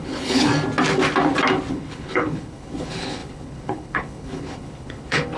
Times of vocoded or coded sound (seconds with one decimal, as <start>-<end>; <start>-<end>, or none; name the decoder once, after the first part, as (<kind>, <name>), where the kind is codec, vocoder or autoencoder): 0.0-0.5 (codec, HILCodec); 1.7-5.4

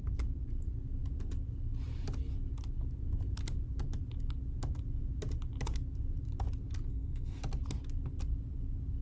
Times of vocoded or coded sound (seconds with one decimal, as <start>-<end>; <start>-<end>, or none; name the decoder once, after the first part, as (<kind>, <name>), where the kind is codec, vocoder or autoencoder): 6.9-7.4 (codec, SNAC)

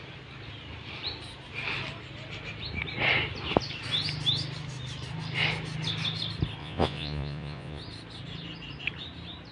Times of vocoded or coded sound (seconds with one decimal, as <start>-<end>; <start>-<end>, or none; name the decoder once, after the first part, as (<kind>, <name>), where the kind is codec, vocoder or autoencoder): 6.6-7.8 (vocoder, Vocos)

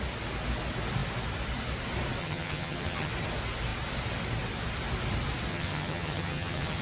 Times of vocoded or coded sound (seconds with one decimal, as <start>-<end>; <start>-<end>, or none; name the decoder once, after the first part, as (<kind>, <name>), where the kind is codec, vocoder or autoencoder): 2.2-3.1 (vocoder, HiFi-GAN); 5.5-6.8